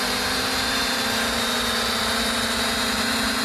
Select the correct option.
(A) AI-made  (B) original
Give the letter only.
A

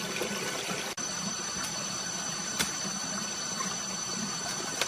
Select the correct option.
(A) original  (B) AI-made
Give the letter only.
A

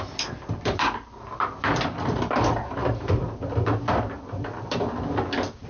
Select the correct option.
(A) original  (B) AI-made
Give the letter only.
B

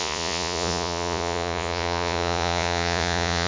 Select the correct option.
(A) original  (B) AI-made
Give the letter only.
B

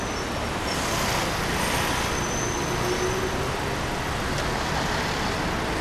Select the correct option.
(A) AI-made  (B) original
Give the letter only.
B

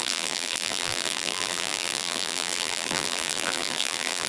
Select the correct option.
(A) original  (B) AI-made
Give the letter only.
B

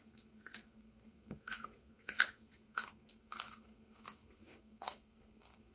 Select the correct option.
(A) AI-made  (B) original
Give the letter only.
A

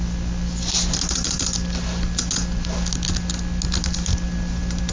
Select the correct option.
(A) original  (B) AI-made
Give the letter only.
A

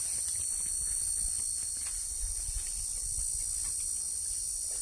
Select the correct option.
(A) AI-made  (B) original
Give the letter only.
B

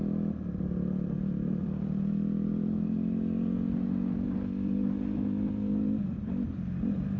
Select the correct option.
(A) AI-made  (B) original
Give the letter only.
B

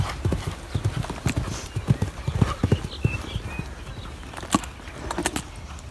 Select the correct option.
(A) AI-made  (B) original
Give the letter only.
B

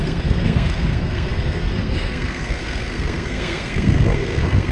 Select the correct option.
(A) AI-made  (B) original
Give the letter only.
A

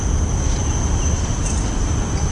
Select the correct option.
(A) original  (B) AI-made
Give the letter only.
A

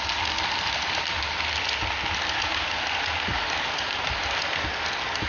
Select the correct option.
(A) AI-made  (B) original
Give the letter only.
B